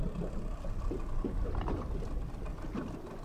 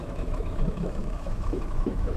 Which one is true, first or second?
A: first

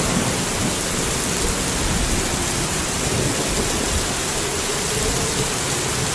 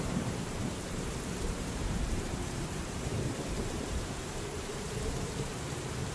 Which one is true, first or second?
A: first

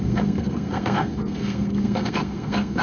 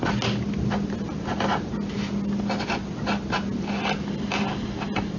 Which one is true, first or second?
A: second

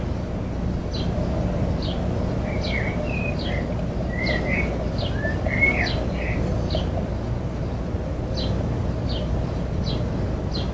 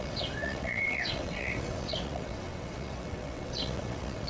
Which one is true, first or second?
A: first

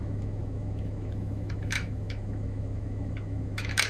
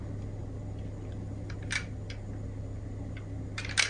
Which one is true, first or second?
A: second